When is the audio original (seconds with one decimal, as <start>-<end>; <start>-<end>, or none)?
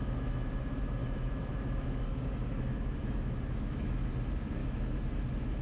0.6-1.0; 4.1-4.6; 5.1-5.6